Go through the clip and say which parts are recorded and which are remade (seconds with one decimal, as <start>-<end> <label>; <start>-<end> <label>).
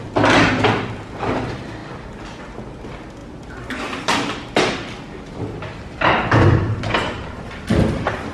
0.0-8.3 recorded